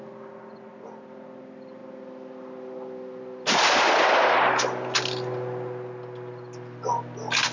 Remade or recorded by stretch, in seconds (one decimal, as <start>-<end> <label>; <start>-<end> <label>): 0.0-7.5 recorded